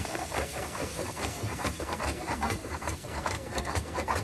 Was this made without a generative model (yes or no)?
no